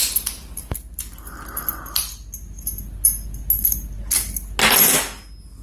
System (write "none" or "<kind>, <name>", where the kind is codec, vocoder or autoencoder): none